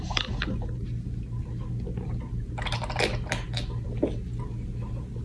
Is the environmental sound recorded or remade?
recorded